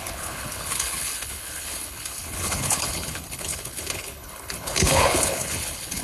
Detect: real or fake fake